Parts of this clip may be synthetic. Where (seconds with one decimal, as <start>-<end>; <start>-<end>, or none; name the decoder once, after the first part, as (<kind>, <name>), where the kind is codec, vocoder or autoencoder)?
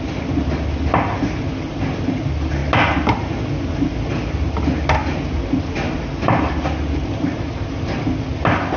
none